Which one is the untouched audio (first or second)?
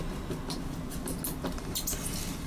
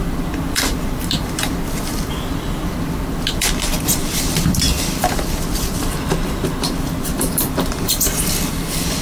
first